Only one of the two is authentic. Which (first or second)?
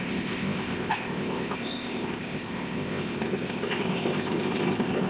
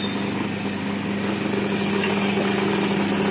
second